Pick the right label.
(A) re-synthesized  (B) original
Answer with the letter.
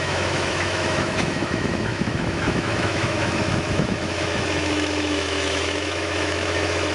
A